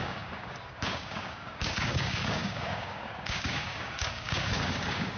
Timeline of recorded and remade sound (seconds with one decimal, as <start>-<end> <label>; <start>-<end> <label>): 0.0-5.2 remade